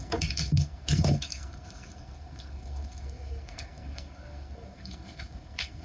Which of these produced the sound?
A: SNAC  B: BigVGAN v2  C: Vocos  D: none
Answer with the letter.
A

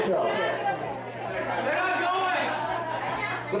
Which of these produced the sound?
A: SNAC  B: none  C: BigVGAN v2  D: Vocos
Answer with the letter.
B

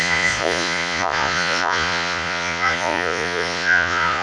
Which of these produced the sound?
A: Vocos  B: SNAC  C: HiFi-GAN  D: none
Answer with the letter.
A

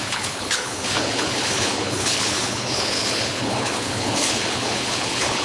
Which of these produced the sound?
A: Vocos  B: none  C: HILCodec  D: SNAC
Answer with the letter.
C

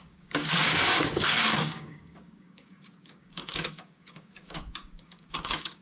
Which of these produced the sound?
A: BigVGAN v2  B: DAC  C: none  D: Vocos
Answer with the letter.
B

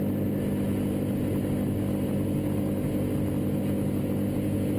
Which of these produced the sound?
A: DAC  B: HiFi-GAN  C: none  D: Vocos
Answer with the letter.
C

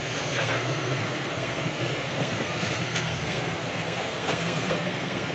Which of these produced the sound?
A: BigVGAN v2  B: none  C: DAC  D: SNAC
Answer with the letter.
D